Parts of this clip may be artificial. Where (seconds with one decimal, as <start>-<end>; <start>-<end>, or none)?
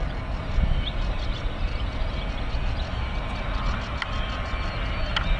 none